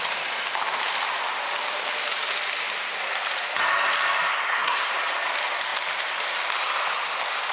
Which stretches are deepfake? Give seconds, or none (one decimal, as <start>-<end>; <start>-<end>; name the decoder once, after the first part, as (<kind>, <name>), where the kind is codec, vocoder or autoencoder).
4.3-4.9 (codec, SNAC)